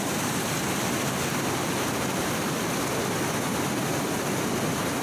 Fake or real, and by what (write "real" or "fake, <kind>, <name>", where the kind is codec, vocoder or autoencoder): real